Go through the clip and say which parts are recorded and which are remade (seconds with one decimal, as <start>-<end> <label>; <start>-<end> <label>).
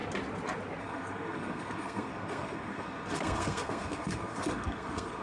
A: 0.0-0.8 recorded; 0.8-5.2 remade